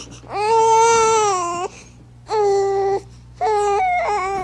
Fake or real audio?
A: real